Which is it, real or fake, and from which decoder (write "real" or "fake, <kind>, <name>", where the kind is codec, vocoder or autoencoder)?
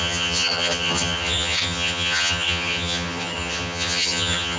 fake, vocoder, HiFi-GAN